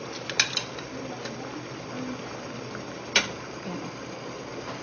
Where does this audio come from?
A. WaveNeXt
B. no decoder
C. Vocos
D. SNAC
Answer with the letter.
B